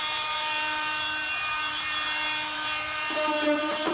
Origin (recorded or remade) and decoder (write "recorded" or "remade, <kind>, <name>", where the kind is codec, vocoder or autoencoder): remade, vocoder, BigVGAN v2